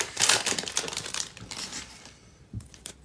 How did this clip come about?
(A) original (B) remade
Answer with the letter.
B